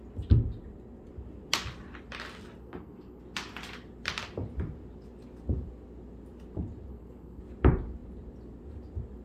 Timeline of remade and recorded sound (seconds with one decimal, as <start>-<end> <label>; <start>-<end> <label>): 0.0-2.6 recorded; 2.6-3.2 remade; 3.2-6.9 recorded; 6.9-7.4 remade; 7.4-9.2 recorded